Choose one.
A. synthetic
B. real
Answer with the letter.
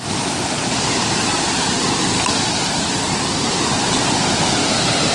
B